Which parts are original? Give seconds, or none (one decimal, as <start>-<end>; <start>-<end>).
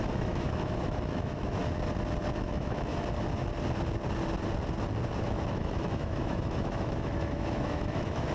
1.6-2.4; 2.9-5.2